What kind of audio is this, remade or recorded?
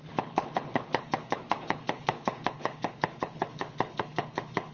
remade